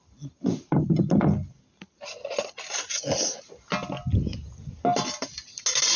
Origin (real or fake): real